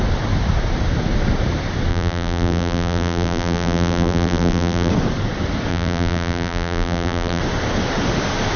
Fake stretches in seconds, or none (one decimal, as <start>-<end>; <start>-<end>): 1.9-4.9; 5.7-7.4